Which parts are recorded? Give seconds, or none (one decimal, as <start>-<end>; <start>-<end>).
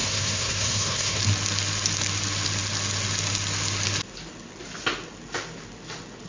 1.2-6.3